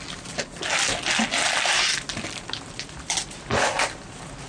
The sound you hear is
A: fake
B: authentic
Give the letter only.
B